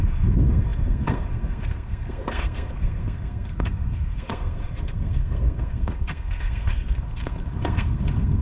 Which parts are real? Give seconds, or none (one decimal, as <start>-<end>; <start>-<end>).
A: none